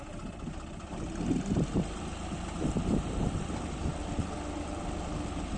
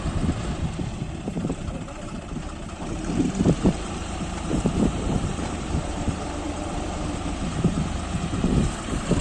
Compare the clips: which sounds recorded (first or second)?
first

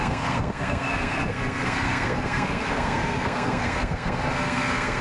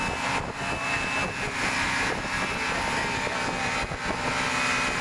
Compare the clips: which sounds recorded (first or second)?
second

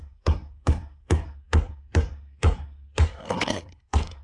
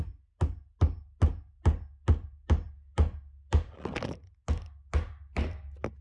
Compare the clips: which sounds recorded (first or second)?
second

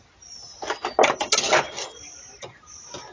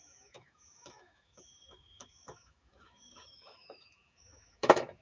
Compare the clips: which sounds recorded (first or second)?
first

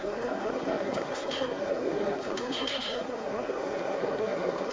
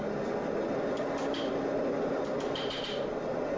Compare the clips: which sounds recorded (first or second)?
second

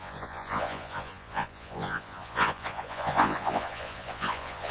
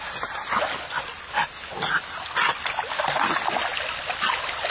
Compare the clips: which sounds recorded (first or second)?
second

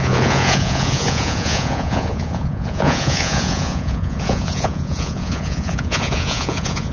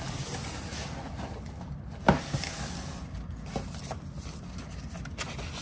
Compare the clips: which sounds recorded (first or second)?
second